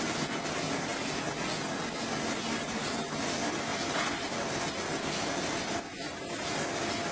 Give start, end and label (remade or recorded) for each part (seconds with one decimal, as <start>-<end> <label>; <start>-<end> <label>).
0.0-7.1 recorded